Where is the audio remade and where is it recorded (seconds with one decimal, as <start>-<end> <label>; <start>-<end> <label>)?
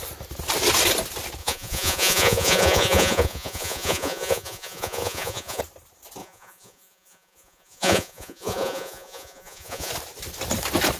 0.0-1.4 recorded; 1.4-5.6 remade; 5.6-6.2 recorded; 6.2-9.9 remade; 9.9-11.0 recorded